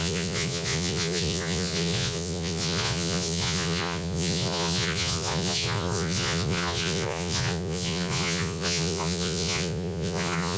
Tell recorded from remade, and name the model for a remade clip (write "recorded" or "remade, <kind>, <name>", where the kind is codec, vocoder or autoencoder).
remade, vocoder, Vocos